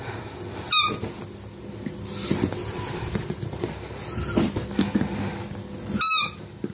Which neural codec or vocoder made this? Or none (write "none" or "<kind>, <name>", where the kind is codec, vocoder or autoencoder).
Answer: none